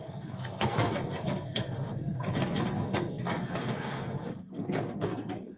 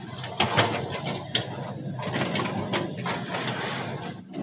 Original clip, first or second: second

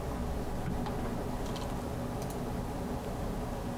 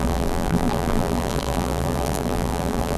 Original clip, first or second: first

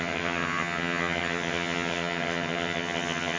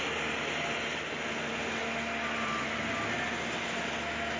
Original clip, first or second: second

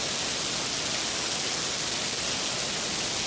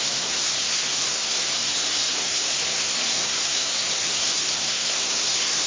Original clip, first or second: first